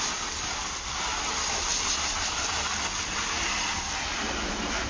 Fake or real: real